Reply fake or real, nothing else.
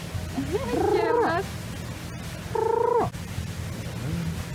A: real